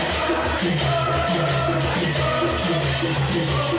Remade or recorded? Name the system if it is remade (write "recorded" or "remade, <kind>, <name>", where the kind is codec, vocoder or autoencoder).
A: recorded